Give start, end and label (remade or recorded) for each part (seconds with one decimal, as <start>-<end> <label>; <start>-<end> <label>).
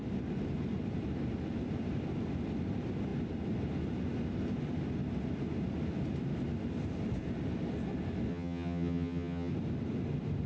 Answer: 0.0-8.3 recorded; 8.3-9.5 remade; 9.5-10.5 recorded